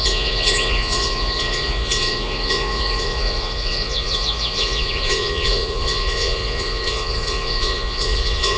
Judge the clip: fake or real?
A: fake